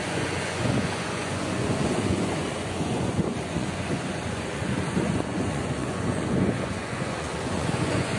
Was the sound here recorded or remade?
remade